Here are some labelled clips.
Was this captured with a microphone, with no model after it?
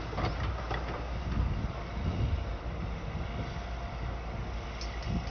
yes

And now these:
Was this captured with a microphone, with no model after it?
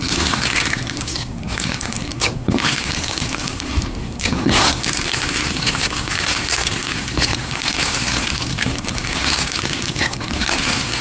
no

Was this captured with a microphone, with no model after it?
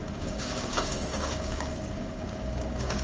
no